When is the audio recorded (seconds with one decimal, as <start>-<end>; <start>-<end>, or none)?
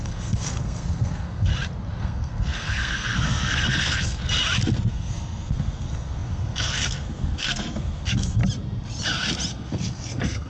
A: 1.5-2.0; 4.2-4.9; 8.4-9.5